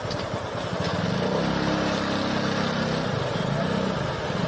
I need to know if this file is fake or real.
real